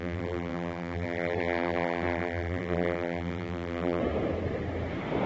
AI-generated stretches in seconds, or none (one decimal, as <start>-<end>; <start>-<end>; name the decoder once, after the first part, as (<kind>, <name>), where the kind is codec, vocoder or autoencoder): 0.0-4.0 (vocoder, BigVGAN v2)